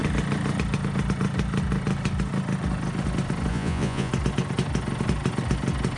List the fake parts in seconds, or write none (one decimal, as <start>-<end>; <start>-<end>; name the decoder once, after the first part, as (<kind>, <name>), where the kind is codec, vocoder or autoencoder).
3.5-4.1 (vocoder, Vocos)